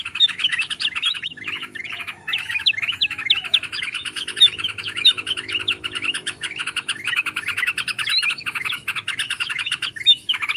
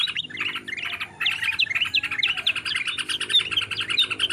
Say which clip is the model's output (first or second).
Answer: first